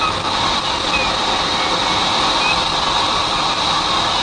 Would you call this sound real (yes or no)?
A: yes